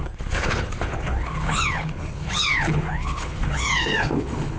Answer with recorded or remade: remade